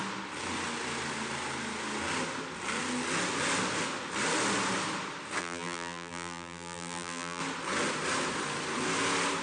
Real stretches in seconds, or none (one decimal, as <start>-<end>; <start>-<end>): 0.0-5.4; 7.4-9.4